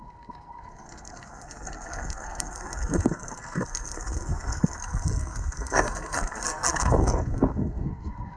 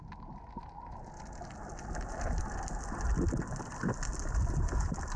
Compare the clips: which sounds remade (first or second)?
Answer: first